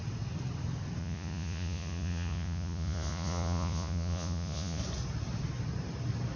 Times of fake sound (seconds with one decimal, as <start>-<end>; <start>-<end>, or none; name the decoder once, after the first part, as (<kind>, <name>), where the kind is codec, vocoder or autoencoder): 1.0-4.8 (vocoder, Vocos)